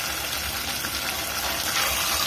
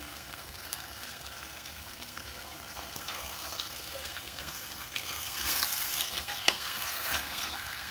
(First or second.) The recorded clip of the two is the first